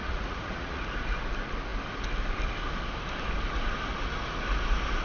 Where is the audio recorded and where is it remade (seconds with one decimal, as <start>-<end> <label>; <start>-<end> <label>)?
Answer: 0.0-0.8 remade; 0.8-5.0 recorded